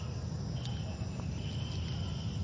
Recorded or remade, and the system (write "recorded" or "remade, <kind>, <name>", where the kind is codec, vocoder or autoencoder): recorded